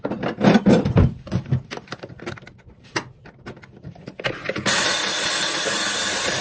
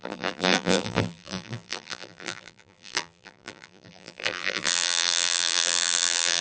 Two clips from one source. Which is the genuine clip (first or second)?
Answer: first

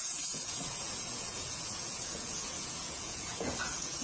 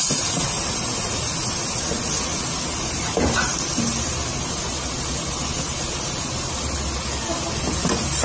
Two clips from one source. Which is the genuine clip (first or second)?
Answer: second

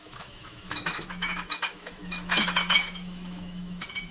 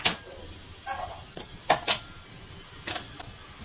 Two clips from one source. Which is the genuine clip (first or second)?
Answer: second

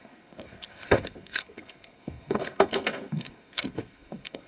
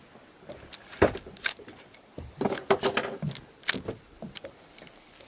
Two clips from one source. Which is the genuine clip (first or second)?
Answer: second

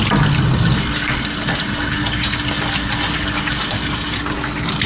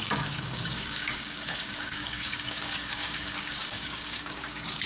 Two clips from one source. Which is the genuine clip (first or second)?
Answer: first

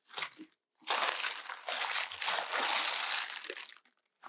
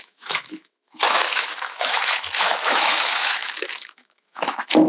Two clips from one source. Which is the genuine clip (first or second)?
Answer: first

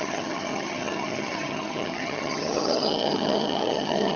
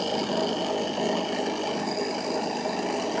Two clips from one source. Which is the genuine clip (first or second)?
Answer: second